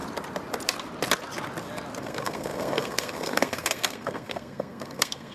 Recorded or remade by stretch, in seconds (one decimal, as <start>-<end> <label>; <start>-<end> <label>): 0.0-2.0 recorded; 2.0-5.3 remade